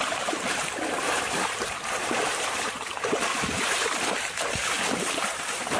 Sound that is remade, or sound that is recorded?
remade